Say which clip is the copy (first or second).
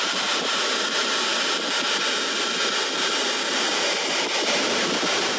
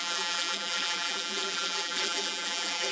second